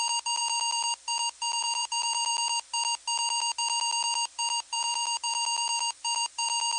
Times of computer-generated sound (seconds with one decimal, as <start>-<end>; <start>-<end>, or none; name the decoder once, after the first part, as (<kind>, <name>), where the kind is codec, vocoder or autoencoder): 0.0-2.3 (vocoder, BigVGAN v2); 4.3-6.8